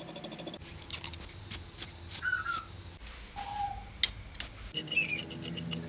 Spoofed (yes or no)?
no